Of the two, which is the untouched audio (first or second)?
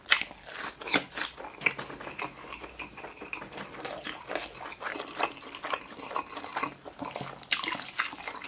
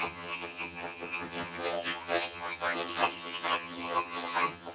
first